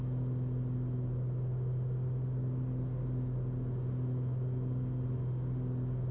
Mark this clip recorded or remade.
recorded